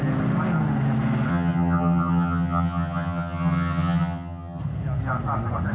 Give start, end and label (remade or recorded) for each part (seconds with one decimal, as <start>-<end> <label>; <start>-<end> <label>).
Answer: 0.0-1.3 recorded; 1.3-4.6 remade; 4.6-5.7 recorded